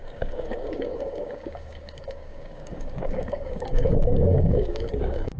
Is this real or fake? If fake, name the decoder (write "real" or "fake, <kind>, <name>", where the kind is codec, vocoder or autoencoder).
fake, codec, DAC